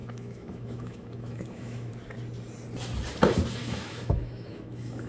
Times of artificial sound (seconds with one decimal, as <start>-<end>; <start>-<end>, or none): 0.0-1.9; 3.6-5.1